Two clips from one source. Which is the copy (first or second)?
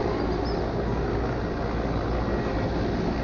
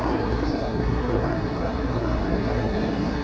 second